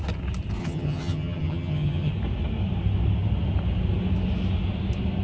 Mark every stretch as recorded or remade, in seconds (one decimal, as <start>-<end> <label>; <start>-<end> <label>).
0.0-0.6 recorded; 0.6-2.1 remade; 2.1-5.2 recorded